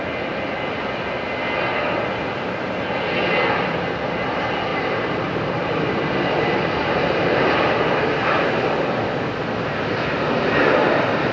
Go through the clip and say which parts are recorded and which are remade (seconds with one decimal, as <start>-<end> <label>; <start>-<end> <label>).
0.0-4.7 recorded; 4.7-8.0 remade; 8.0-11.3 recorded